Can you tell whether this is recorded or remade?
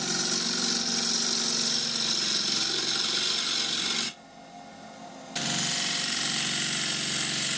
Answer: recorded